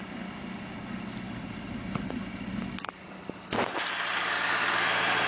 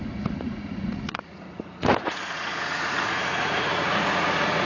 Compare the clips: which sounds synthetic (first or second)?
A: second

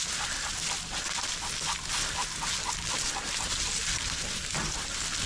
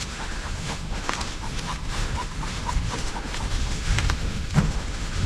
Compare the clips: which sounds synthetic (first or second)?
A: second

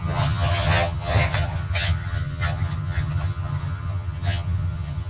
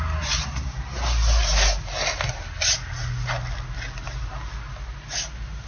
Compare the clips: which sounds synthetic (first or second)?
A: first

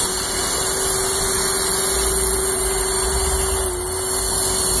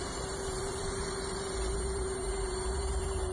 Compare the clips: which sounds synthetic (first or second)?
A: second